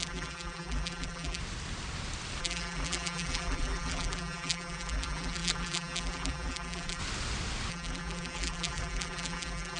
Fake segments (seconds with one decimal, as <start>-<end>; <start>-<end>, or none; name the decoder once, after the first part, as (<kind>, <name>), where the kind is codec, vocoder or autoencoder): 0.0-1.4 (vocoder, BigVGAN v2); 2.4-7.0; 7.7-9.8